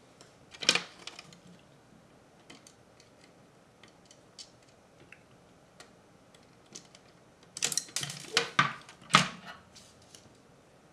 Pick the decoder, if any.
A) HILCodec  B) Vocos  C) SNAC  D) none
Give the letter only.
D